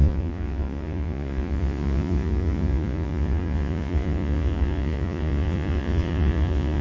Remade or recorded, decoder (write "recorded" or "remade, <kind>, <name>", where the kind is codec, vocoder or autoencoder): remade, vocoder, Vocos